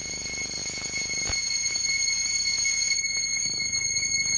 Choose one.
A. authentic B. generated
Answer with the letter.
B